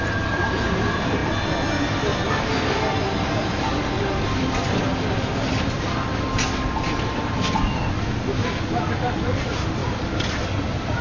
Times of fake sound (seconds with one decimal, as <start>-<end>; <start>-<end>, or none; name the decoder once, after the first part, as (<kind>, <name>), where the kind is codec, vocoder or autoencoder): none

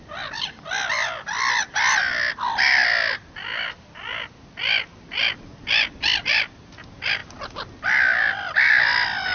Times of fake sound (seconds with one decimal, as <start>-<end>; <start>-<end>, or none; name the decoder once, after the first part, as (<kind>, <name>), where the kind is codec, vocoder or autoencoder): none

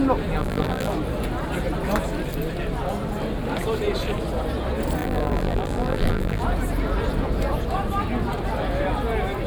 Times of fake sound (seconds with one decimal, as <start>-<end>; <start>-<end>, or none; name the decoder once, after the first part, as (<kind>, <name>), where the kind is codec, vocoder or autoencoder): 0.4-0.9 (vocoder, BigVGAN v2); 5.0-6.4

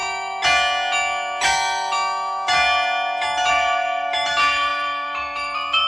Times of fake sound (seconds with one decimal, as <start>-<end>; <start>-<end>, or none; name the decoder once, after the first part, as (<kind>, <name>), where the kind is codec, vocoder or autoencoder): 3.5-5.9 (vocoder, BigVGAN v2)

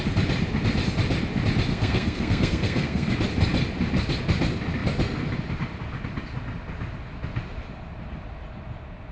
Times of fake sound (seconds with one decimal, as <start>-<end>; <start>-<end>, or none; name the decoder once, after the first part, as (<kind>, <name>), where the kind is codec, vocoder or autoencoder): 1.7-3.1 (codec, SNAC)

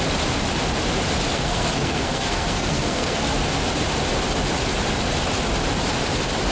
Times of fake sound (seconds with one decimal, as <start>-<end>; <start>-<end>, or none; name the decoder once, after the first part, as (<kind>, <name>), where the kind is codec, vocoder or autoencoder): 1.3-3.2 (codec, SNAC)

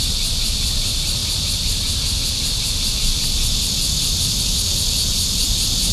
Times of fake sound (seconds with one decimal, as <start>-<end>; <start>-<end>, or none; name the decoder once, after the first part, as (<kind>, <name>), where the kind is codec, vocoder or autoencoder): none